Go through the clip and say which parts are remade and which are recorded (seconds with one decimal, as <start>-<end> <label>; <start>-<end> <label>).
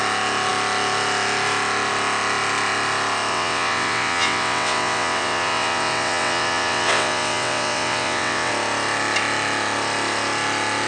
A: 0.0-3.3 recorded; 3.3-8.5 remade; 8.5-10.9 recorded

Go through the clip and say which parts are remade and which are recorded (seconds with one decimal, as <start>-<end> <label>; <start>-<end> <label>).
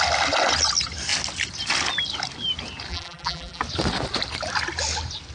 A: 0.0-2.9 recorded; 2.9-3.6 remade; 3.6-5.3 recorded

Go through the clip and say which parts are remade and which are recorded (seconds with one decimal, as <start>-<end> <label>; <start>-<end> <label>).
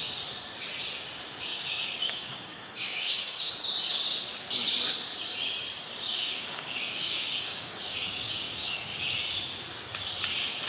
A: 0.0-1.5 recorded; 1.5-3.5 remade; 3.5-6.1 recorded; 6.1-9.2 remade; 9.2-10.7 recorded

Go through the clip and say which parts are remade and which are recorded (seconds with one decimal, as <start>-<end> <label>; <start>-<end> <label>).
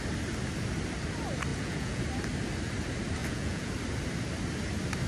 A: 0.0-1.5 recorded; 1.5-2.0 remade; 2.0-3.2 recorded; 3.2-3.7 remade; 3.7-5.1 recorded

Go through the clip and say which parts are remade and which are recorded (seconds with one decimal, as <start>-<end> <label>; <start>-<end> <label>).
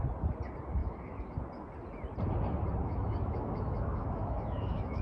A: 0.0-0.8 recorded; 0.8-1.4 remade; 1.4-2.8 recorded; 2.8-5.0 remade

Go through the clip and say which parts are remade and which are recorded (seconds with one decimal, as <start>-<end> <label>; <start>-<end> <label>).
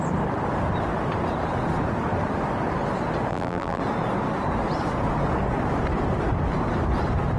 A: 0.0-3.3 recorded; 3.3-3.8 remade; 3.8-7.4 recorded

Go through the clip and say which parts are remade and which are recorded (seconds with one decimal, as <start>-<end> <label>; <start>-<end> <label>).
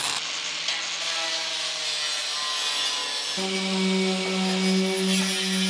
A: 0.0-5.7 recorded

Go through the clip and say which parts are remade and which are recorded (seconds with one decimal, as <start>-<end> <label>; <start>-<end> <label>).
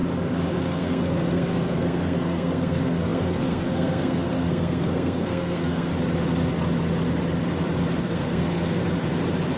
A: 0.0-0.6 recorded; 0.6-5.9 remade; 5.9-8.0 recorded; 8.0-8.8 remade; 8.8-9.6 recorded